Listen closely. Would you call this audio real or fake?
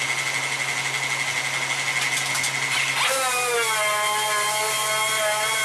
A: real